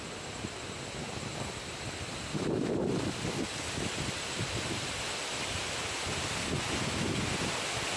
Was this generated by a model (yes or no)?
no